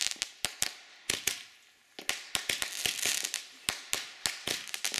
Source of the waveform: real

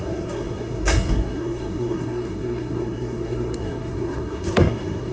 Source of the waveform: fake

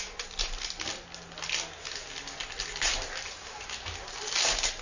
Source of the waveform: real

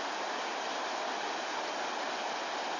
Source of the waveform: real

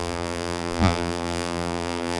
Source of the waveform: fake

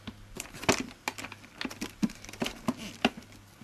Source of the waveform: real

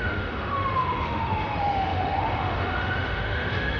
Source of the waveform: fake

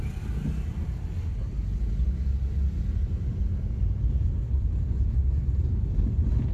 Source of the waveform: real